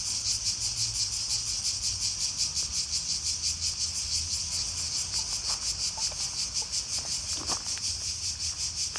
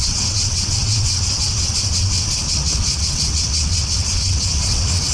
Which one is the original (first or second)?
first